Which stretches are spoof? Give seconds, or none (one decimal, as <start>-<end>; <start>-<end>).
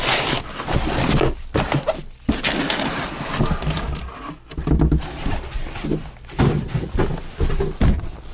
none